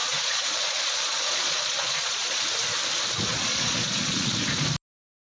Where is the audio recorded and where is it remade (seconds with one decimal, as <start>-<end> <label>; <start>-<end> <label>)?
0.0-2.4 remade; 2.4-3.3 recorded; 3.3-4.4 remade; 4.4-5.2 recorded